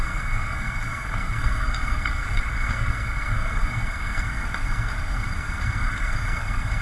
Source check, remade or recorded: remade